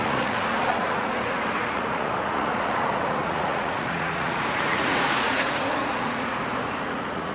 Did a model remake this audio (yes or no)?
yes